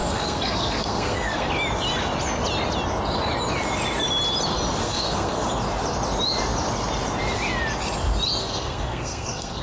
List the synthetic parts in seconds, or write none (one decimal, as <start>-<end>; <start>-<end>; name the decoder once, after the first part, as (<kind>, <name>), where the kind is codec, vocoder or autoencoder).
0.0-1.5 (codec, SNAC); 4.8-5.5; 8.4-9.6